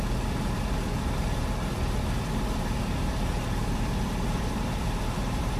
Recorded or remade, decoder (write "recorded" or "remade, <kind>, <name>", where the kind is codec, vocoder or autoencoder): remade, vocoder, BigVGAN v2